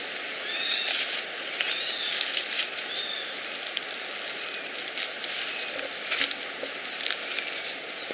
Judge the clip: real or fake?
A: real